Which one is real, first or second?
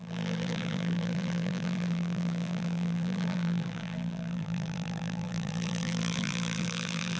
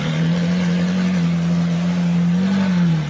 second